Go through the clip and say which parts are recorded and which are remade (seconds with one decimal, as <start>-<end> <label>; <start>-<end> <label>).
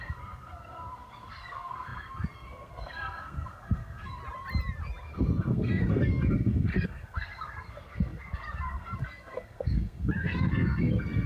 0.0-4.2 remade; 4.2-5.0 recorded; 5.0-11.3 remade